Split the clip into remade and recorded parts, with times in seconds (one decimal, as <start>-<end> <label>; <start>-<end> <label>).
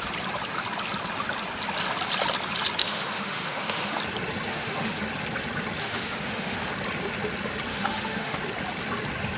0.0-2.8 recorded; 2.8-4.0 remade; 4.0-4.5 recorded; 4.5-5.0 remade; 5.0-5.8 recorded; 5.8-6.7 remade; 6.7-7.7 recorded; 7.7-8.4 remade; 8.4-9.4 recorded